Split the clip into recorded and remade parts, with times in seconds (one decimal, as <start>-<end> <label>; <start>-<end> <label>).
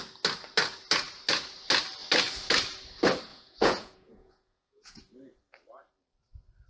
0.0-3.3 recorded; 3.3-5.0 remade; 5.0-6.7 recorded